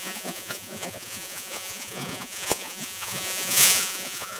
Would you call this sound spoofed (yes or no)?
yes